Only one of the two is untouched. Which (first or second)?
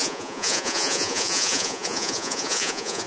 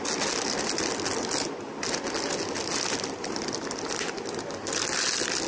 second